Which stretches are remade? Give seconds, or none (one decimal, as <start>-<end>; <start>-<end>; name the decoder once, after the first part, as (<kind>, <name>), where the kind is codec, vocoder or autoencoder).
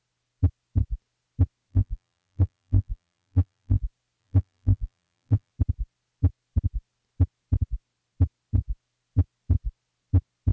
1.7-3.8 (vocoder, BigVGAN v2); 4.2-5.5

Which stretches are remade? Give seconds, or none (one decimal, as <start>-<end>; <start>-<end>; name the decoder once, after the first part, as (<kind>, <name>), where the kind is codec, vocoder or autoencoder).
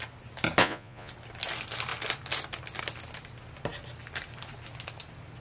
0.6-1.1 (vocoder, Vocos)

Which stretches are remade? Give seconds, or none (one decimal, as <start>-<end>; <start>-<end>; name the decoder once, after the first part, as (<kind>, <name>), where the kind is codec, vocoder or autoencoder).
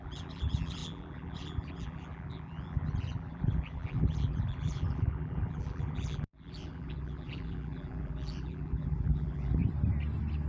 0.0-9.6 (vocoder, BigVGAN v2)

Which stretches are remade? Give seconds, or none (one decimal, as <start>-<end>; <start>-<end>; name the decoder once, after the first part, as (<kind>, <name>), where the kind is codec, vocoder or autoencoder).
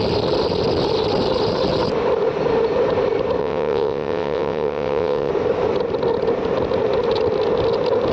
3.4-5.3 (vocoder, WaveNeXt)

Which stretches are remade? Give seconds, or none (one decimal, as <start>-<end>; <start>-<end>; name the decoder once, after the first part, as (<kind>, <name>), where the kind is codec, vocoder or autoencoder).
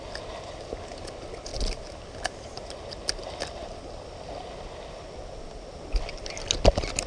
none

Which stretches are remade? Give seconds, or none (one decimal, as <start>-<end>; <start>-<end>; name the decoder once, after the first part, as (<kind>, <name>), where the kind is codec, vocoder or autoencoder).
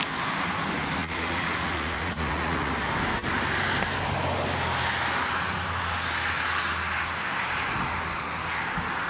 1.0-2.7 (vocoder, Vocos)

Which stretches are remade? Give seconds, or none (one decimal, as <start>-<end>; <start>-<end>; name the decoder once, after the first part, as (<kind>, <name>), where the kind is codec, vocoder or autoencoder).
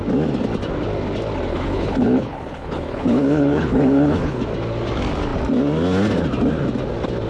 1.5-4.4 (codec, HILCodec)